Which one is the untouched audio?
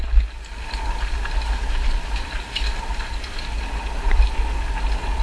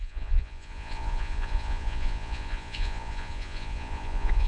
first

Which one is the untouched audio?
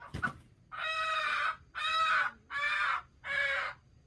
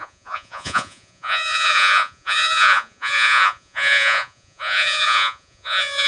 first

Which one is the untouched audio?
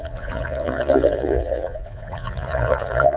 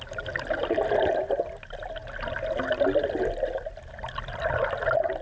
second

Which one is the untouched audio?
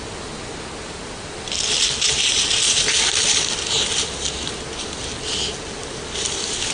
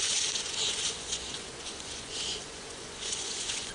first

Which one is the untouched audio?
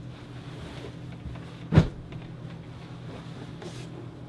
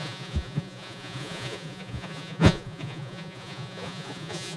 first